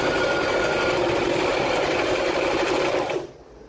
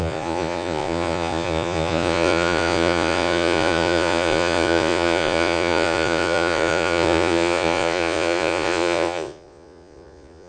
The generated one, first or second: second